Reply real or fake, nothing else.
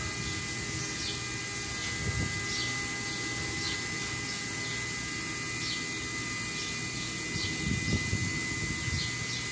real